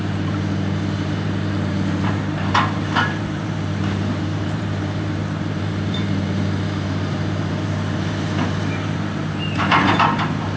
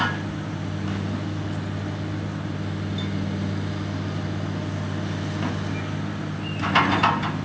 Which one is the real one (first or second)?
second